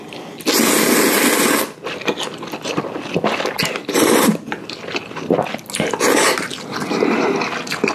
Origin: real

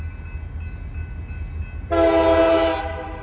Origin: real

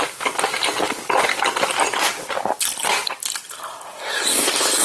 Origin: real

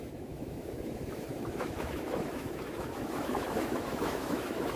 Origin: fake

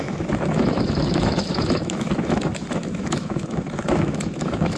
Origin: fake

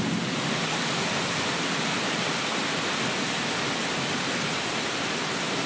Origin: real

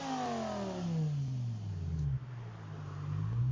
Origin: real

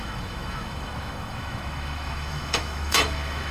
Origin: fake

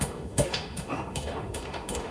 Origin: fake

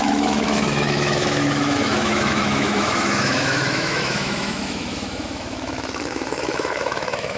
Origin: fake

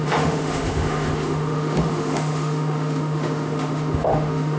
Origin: fake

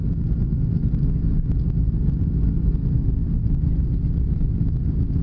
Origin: real